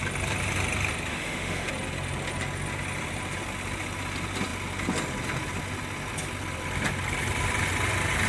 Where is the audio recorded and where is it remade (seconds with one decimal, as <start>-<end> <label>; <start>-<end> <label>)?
0.0-1.1 recorded; 1.1-1.7 remade; 1.7-8.3 recorded